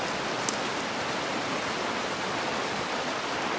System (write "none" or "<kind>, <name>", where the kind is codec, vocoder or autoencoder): none